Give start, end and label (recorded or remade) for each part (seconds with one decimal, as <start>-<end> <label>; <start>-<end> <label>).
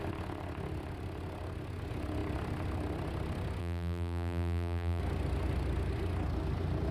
0.0-3.6 recorded; 3.6-5.0 remade; 5.0-6.9 recorded